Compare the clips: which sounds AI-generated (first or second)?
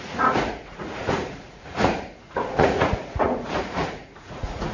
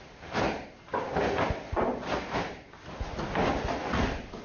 first